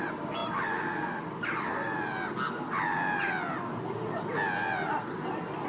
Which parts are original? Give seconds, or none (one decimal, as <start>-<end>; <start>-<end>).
0.0-5.7